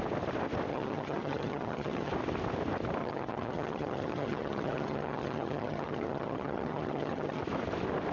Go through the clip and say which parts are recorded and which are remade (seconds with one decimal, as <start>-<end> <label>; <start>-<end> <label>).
0.0-0.7 recorded; 0.7-2.1 remade; 2.1-3.0 recorded; 3.0-7.4 remade; 7.4-8.1 recorded